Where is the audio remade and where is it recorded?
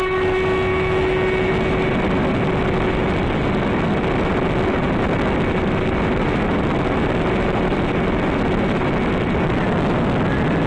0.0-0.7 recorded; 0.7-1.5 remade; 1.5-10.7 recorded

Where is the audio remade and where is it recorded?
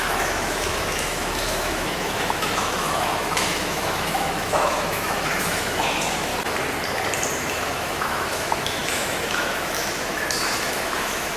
0.0-6.3 remade; 6.3-7.4 recorded; 7.4-11.4 remade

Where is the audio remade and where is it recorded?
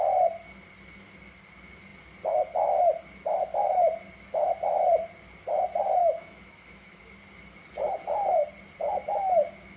0.0-6.0 recorded; 6.0-7.0 remade; 7.0-9.8 recorded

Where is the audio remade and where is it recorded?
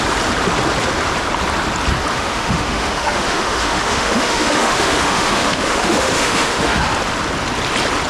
0.0-2.1 recorded; 2.1-6.8 remade; 6.8-8.1 recorded